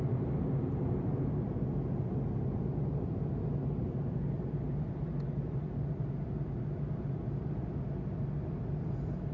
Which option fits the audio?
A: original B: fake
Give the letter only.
A